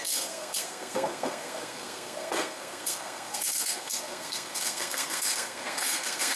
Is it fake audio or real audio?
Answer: fake